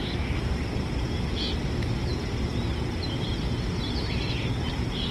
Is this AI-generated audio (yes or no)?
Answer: no